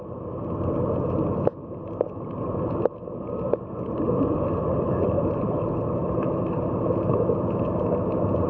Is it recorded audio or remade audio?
recorded